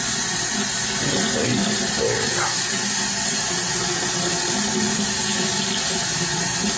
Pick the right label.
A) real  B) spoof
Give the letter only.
A